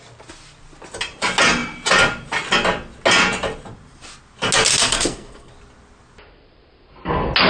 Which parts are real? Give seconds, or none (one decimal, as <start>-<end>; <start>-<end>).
0.0-4.8; 5.5-7.5